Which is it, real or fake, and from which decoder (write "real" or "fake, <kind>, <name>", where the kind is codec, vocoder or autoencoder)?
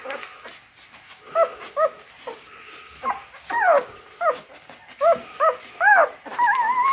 real